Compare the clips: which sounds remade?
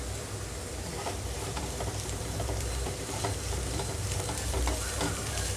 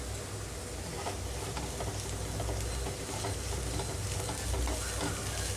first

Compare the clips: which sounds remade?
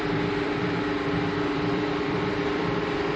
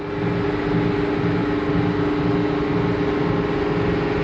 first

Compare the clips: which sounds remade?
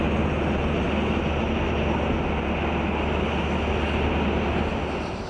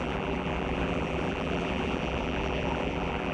second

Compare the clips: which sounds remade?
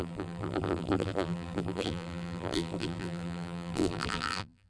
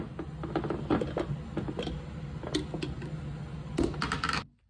first